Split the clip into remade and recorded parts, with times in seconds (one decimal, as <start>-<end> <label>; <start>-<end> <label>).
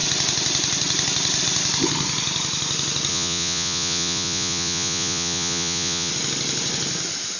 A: 0.0-3.1 recorded; 3.1-6.1 remade; 6.1-7.4 recorded